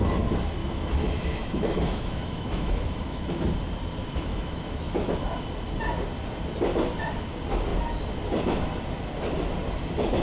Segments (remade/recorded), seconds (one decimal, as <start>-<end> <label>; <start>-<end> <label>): 0.0-0.6 recorded; 0.6-3.3 remade; 3.3-4.0 recorded; 4.0-5.1 remade; 5.1-10.2 recorded